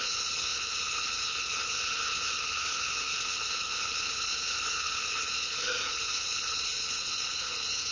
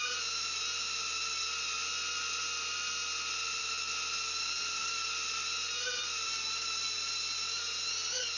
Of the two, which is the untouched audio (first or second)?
second